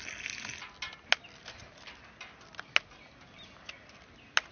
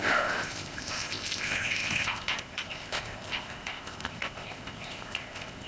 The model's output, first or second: second